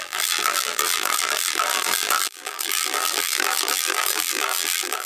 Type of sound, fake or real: fake